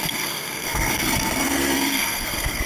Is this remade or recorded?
remade